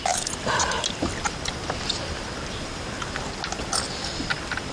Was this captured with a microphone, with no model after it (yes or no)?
yes